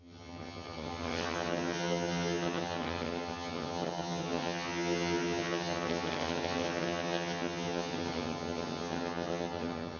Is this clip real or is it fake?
fake